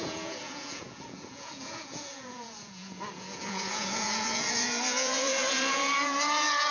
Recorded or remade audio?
remade